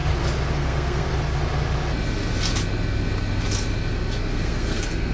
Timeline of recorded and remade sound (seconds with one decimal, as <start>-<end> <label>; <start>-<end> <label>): 0.0-0.5 recorded; 0.5-1.1 remade; 1.1-4.2 recorded; 4.2-5.1 remade